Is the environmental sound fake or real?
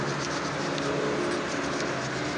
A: real